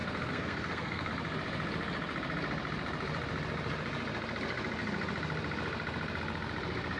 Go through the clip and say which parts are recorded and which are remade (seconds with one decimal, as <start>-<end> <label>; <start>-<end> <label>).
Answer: 0.0-1.1 remade; 1.1-7.0 recorded